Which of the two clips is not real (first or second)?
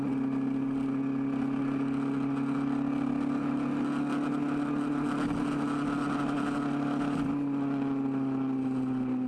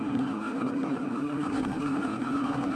second